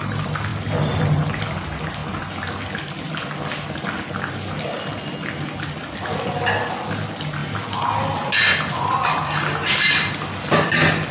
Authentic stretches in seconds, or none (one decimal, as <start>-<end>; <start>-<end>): 0.0-11.1